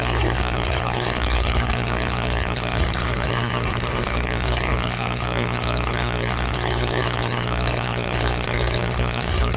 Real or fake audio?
fake